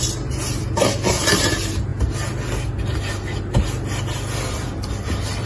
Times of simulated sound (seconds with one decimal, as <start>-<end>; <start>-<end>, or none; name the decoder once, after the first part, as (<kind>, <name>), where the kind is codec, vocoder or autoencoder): none